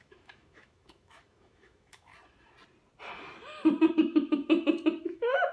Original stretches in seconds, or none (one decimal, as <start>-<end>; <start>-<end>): 2.1-3.9; 4.4-5.0